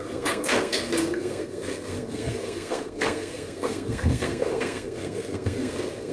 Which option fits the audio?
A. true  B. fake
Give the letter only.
B